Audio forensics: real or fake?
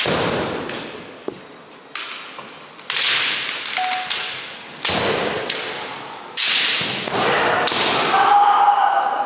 real